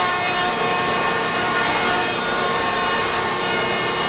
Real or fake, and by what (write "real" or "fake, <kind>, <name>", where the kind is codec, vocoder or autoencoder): fake, vocoder, BigVGAN v2